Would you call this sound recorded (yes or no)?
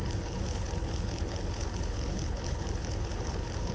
no